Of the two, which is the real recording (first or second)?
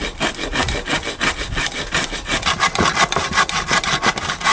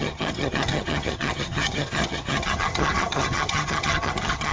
first